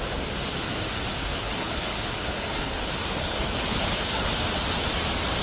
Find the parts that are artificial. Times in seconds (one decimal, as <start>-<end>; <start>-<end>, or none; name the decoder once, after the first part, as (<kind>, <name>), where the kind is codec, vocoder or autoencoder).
1.3-4.3 (codec, HILCodec)